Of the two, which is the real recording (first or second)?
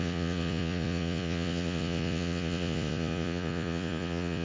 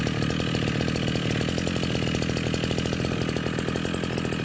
second